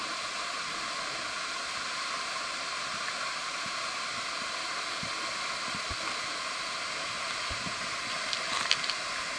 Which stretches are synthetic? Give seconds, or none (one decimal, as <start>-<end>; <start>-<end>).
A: none